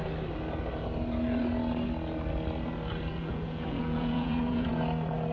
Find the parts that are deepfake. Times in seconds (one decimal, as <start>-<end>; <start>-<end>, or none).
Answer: 3.1-4.7